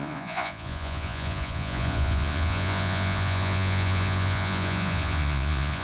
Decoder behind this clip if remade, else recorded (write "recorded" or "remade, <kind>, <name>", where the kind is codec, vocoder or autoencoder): remade, vocoder, Vocos